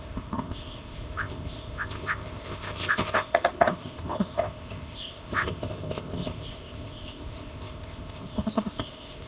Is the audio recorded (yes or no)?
no